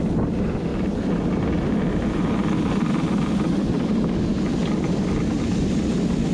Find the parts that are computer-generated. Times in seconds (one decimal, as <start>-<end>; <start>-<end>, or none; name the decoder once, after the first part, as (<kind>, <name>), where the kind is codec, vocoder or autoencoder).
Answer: none